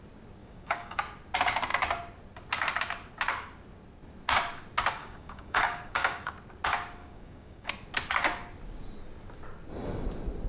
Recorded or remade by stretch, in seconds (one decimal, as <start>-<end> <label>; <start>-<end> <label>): 0.0-0.4 recorded; 0.4-1.0 remade; 1.0-5.0 recorded; 5.0-6.3 remade; 6.3-7.0 recorded; 7.0-7.7 remade; 7.7-10.5 recorded